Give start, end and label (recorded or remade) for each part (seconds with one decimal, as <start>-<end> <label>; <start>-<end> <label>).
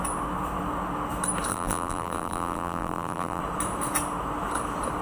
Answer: 0.0-1.5 recorded; 1.5-3.4 remade; 3.4-5.0 recorded